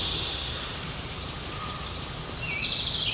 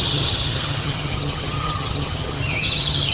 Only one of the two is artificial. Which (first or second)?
second